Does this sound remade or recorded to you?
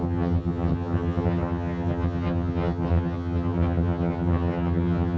remade